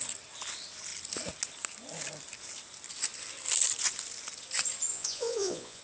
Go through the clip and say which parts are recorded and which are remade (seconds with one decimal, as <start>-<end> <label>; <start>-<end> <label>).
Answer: 0.0-4.9 recorded; 4.9-5.8 remade